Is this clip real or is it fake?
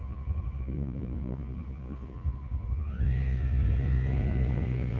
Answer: fake